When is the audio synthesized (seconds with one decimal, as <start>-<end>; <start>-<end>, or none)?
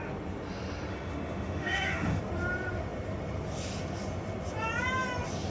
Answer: 0.9-2.2